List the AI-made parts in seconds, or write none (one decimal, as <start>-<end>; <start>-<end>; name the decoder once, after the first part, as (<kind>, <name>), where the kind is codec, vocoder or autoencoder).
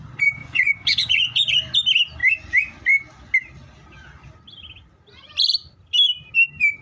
0.4-1.5 (vocoder, Vocos)